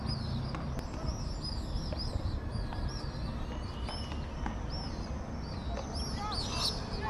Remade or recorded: recorded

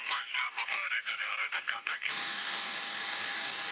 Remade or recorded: remade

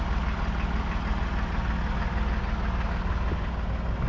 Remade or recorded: recorded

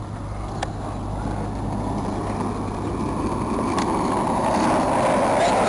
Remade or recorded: recorded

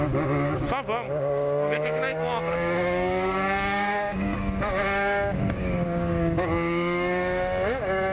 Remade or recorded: remade